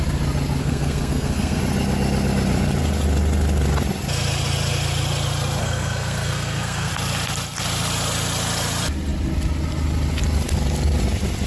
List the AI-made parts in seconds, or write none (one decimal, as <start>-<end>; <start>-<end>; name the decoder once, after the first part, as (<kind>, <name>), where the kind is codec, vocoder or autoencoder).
0.6-1.6 (codec, SNAC); 5.6-6.9